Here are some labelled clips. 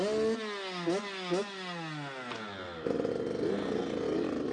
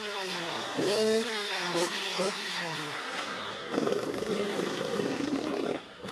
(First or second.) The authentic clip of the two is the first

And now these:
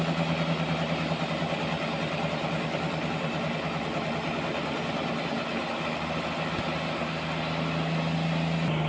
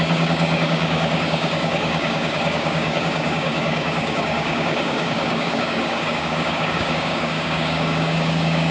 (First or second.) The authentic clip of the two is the first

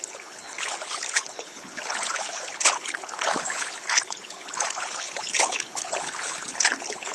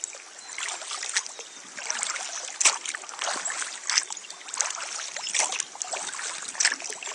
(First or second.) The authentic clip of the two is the second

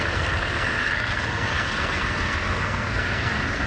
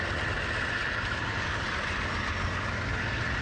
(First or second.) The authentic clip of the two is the second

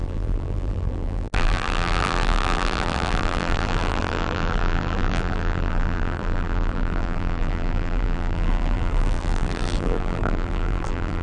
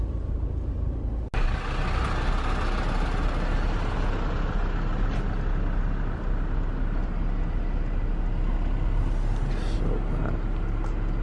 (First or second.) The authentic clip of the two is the second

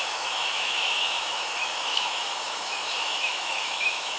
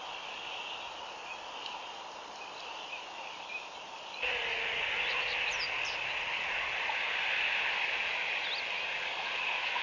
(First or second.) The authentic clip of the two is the second